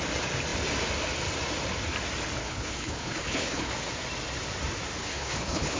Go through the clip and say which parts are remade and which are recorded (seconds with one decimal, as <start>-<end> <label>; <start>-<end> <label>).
0.0-2.4 recorded; 2.4-3.7 remade; 3.7-5.0 recorded; 5.0-5.8 remade